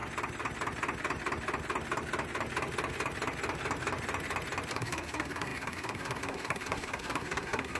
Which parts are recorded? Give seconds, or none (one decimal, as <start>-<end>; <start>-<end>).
0.0-4.7